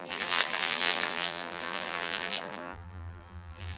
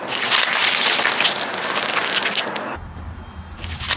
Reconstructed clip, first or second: first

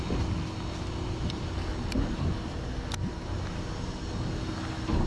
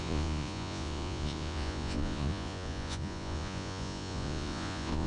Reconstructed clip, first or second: second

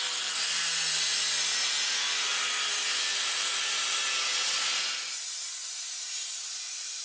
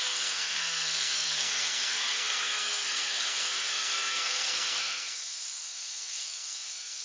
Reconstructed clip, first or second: second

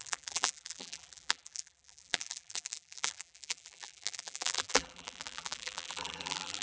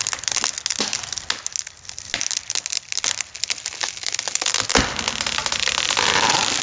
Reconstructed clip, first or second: first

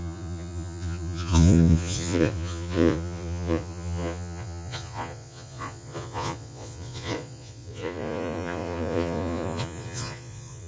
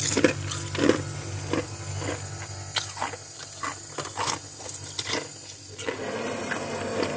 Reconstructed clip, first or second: first